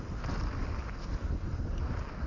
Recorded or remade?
recorded